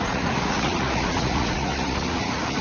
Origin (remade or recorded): remade